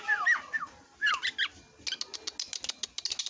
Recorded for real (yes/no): yes